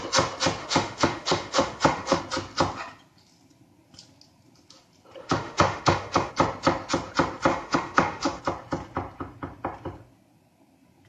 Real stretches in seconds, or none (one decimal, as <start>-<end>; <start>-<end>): 0.0-0.6; 2.2-5.2; 6.3-7.5; 8.4-11.1